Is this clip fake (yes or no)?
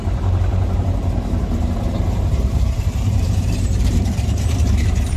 yes